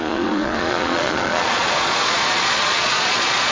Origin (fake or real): fake